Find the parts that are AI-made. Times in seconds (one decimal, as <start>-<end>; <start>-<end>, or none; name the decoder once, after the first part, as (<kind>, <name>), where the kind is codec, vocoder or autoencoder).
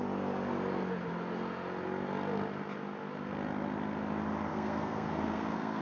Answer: 4.5-5.8 (codec, SNAC)